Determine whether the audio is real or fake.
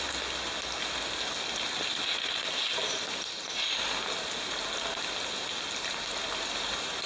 real